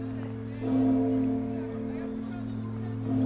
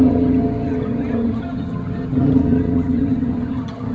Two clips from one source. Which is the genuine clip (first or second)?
first